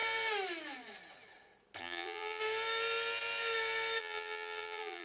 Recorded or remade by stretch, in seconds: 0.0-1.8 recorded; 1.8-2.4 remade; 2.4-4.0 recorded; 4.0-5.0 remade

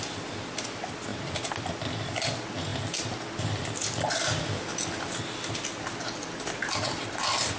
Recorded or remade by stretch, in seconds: 0.0-7.6 recorded

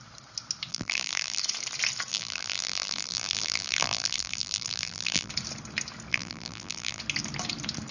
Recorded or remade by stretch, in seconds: 0.0-0.7 recorded; 0.7-1.4 remade; 1.4-2.1 recorded; 2.1-5.3 remade; 5.3-6.1 recorded; 6.1-7.0 remade; 7.0-7.9 recorded

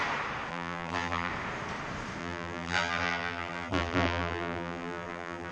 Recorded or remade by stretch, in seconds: 0.0-0.5 recorded; 0.5-1.3 remade; 1.3-2.2 recorded; 2.2-5.5 remade